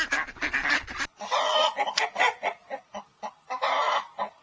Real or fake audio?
real